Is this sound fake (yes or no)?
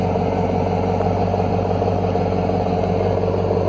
no